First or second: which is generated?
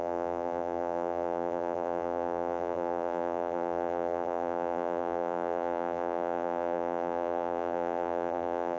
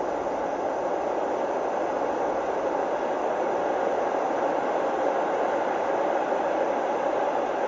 first